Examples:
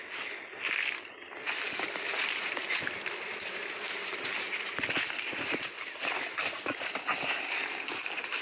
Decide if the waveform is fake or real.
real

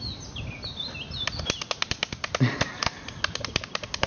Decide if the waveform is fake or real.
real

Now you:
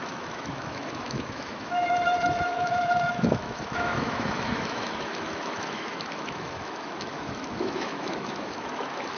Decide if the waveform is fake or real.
fake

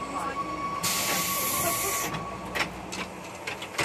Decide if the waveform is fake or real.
real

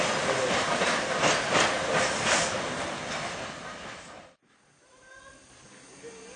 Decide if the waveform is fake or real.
real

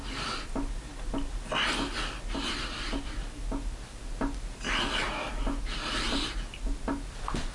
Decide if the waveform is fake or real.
real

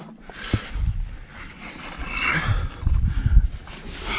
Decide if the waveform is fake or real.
fake